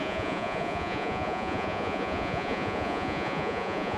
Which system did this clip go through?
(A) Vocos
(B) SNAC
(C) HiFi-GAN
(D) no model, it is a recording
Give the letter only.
A